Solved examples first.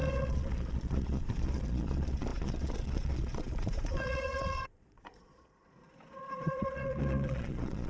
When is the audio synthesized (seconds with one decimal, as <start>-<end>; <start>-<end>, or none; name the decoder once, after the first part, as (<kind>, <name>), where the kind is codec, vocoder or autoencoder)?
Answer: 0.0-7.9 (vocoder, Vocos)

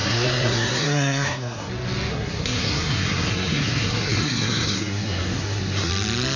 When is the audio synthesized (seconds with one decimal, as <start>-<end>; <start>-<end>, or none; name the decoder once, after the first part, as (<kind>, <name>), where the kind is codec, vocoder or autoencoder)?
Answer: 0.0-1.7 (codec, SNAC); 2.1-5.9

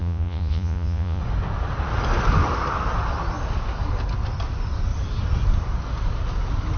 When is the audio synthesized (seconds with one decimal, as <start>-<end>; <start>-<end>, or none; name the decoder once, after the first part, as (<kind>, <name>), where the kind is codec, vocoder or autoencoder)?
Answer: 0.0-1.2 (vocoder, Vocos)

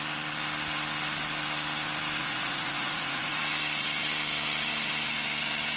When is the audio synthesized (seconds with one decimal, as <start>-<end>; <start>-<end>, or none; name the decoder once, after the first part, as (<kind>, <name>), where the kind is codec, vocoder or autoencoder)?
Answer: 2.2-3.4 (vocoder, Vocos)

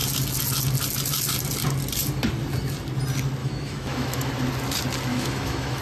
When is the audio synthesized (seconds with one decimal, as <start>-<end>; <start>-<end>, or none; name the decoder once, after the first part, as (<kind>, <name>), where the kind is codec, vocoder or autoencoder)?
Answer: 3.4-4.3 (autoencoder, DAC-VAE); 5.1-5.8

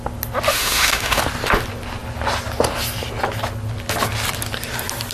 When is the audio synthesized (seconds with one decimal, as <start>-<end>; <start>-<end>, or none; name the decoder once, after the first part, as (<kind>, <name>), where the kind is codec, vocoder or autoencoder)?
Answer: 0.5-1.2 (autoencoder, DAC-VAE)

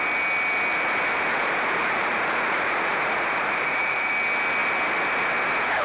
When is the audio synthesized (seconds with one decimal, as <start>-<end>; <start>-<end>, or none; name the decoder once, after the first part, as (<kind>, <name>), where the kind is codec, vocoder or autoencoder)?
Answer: 1.3-4.1 (vocoder, Vocos)

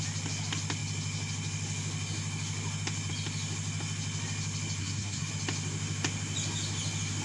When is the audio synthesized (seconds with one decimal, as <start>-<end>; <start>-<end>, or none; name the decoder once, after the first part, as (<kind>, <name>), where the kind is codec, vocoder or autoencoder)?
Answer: 4.8-5.3 (codec, SNAC)